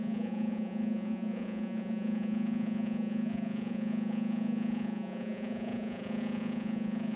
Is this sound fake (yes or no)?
yes